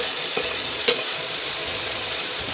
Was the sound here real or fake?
fake